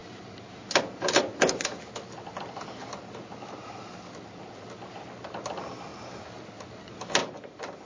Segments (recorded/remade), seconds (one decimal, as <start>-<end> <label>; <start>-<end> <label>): 0.0-0.6 remade; 0.6-7.2 recorded; 7.2-7.9 remade